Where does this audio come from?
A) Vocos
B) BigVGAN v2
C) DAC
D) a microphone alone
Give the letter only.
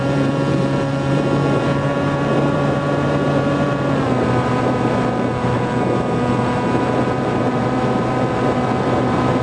B